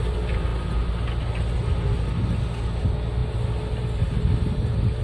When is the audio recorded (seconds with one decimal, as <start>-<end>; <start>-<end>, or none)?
0.0-5.0